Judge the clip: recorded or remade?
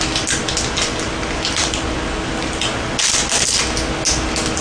recorded